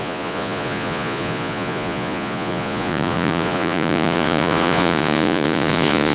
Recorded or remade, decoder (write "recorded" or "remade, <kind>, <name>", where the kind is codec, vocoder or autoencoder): remade, vocoder, Vocos